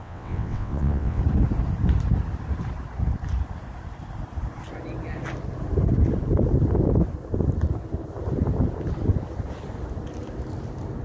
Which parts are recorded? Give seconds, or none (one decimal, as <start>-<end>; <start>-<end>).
1.2-11.0